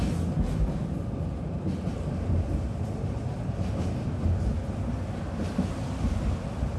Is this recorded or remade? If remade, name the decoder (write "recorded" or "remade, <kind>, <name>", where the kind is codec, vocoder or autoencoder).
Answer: recorded